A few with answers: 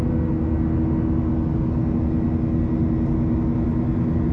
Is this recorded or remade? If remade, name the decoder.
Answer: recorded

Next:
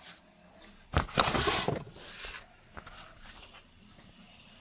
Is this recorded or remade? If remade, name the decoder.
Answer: recorded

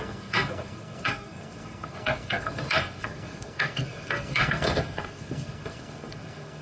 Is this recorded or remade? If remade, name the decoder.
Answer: remade, codec, SNAC